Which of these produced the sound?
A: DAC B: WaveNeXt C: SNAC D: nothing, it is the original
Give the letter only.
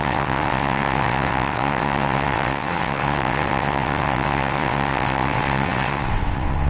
B